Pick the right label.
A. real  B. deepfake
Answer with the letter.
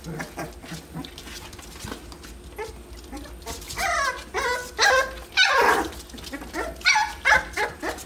A